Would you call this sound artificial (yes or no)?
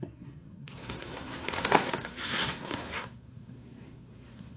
yes